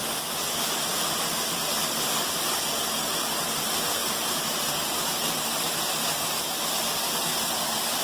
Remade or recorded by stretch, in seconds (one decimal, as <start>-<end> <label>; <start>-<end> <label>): 0.0-7.3 recorded; 7.3-8.0 remade